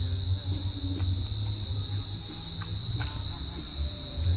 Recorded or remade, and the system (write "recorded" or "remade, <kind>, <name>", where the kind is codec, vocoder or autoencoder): recorded